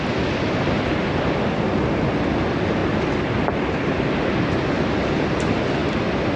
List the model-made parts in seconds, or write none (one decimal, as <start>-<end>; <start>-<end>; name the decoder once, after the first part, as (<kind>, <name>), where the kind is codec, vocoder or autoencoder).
none

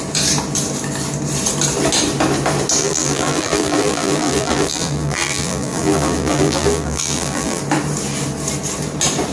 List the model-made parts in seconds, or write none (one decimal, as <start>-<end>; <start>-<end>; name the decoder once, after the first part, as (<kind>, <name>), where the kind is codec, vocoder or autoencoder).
2.8-7.6 (vocoder, BigVGAN v2)